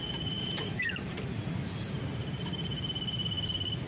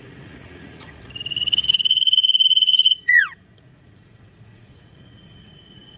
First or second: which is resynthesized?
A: second